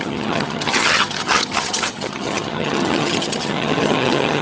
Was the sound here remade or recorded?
remade